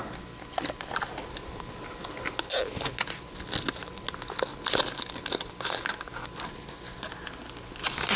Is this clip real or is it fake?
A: real